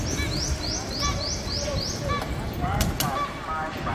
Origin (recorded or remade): recorded